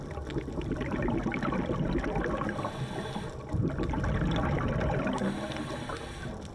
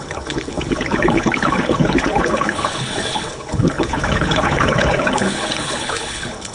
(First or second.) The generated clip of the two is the second